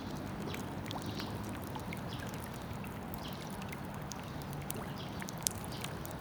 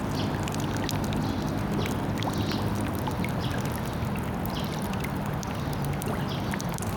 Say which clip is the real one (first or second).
second